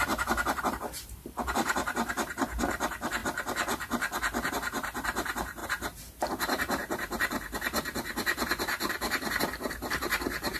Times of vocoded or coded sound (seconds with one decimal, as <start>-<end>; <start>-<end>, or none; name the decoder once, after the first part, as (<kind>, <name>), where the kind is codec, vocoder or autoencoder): 0.0-3.2 (vocoder, BigVGAN v2); 4.5-10.6